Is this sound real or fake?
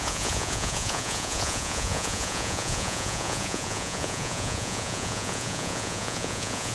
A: fake